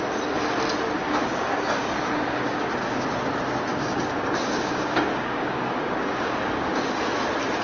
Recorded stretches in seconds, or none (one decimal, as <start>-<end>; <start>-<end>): 0.0-1.0; 3.1-3.7; 6.9-7.6